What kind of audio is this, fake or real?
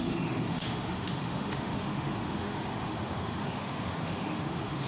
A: fake